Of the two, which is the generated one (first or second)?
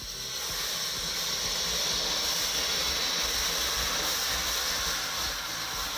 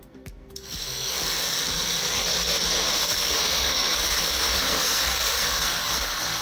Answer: second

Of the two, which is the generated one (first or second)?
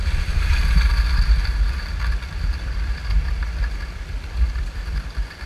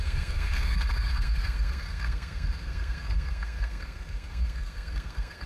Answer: second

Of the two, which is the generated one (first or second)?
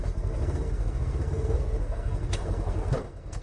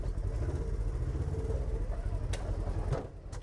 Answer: first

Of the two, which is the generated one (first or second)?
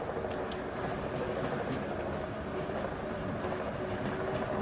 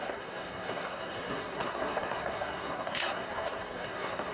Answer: second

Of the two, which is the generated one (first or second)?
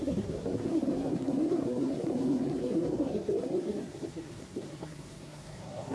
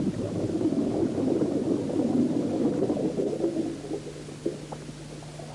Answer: first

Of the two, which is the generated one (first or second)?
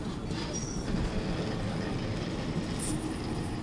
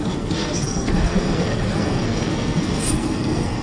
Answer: second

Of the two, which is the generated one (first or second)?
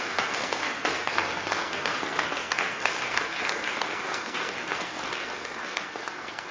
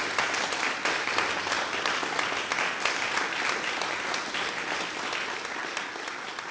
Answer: first